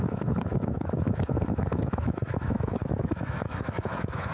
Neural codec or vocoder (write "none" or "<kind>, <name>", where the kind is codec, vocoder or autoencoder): autoencoder, DAC-VAE